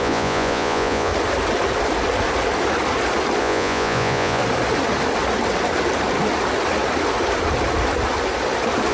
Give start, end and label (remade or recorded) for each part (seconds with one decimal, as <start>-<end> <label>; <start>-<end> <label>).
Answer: 0.0-1.1 remade; 1.1-3.4 recorded; 3.4-4.4 remade; 4.4-8.9 recorded